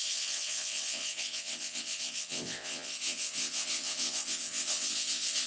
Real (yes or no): no